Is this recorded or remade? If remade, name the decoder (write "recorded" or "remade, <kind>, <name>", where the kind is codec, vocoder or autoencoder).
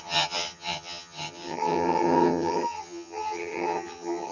remade, vocoder, HiFi-GAN